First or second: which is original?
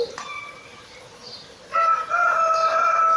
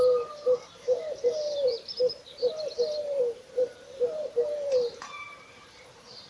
first